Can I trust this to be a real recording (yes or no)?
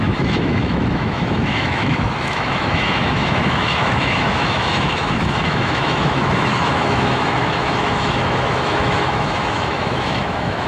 no